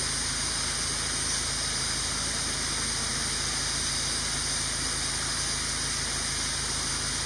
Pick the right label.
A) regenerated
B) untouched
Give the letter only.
B